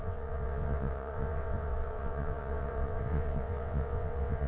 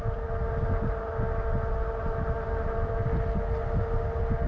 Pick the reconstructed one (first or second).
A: first